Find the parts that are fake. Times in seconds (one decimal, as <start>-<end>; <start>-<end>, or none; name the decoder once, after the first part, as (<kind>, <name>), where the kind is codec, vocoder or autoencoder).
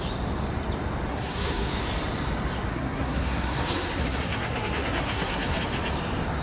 1.1-1.7 (codec, SNAC); 2.7-5.6